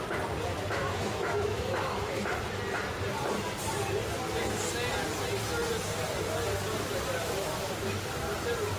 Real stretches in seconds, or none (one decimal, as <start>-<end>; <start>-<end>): 0.0-0.8; 2.3-8.8